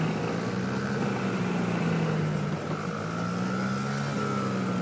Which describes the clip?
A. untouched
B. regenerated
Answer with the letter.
A